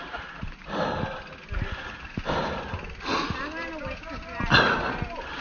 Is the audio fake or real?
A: real